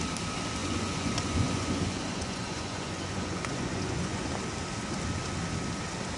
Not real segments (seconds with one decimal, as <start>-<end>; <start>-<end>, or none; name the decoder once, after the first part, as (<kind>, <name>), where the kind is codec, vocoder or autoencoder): 0.6-4.3 (vocoder, Vocos)